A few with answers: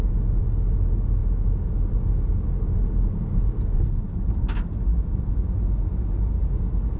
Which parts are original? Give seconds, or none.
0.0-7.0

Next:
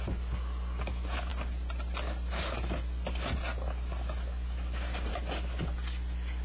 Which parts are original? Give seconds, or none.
0.0-6.4

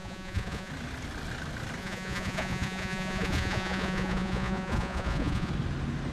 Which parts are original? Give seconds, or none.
0.7-1.8; 5.5-6.1

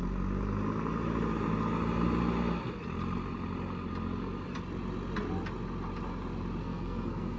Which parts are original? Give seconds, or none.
0.0-6.6

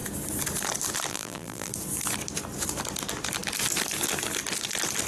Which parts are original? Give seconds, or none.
0.0-1.1; 1.7-5.1